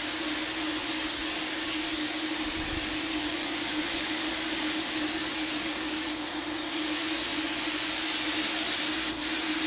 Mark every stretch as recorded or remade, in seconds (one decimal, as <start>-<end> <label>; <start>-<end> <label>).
0.0-3.2 recorded; 3.2-4.1 remade; 4.1-7.3 recorded; 7.3-7.9 remade; 7.9-9.7 recorded